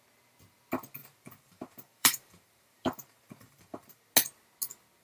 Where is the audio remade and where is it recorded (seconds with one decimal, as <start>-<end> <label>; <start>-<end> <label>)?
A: 0.0-1.0 recorded; 1.0-4.0 remade; 4.0-5.0 recorded